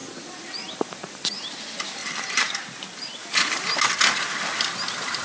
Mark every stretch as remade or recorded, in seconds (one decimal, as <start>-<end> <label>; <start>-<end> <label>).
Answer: 0.0-1.3 remade; 1.3-2.0 recorded; 2.0-2.6 remade; 2.6-3.2 recorded; 3.2-3.8 remade; 3.8-5.2 recorded